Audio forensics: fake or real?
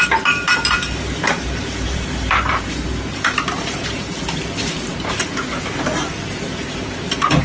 fake